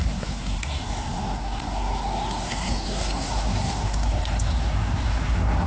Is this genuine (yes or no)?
no